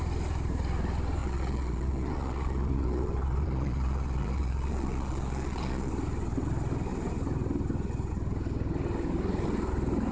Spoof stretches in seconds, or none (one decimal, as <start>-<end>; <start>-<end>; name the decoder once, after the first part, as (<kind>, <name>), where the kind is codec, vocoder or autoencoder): 1.2-5.9 (vocoder, Vocos)